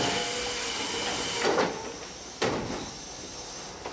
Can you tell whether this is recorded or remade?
recorded